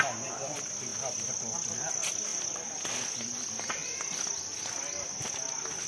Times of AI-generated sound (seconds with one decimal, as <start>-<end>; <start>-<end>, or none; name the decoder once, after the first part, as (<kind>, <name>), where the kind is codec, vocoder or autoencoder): 2.3-2.8 (vocoder, BigVGAN v2)